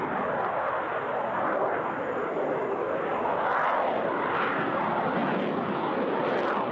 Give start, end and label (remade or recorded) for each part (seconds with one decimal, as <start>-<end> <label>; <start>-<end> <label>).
0.0-6.7 recorded